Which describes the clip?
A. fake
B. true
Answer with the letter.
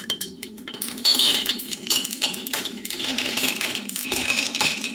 A